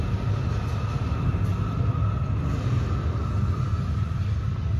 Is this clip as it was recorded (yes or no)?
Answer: yes